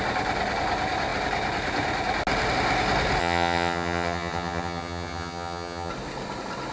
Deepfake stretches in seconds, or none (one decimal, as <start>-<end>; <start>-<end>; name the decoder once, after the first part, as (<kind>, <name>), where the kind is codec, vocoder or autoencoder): 3.2-5.9 (vocoder, HiFi-GAN)